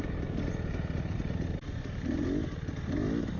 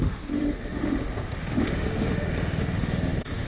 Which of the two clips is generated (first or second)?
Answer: second